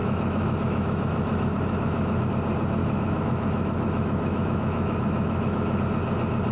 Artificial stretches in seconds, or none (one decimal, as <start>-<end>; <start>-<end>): 0.0-2.3; 2.8-5.8